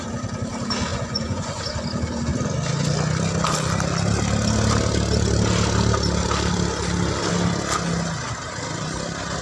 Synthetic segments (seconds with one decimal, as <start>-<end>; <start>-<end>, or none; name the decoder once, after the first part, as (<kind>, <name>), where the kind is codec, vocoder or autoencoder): 0.9-1.6 (vocoder, Vocos)